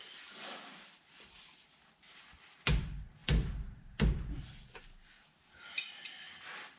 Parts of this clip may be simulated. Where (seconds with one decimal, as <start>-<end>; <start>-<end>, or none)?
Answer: none